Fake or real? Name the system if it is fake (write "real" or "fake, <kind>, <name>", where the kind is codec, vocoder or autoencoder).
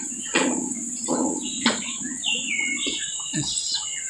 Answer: fake, vocoder, Vocos